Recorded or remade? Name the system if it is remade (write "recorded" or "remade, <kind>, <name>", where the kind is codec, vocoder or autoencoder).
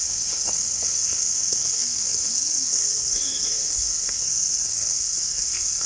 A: remade, codec, SNAC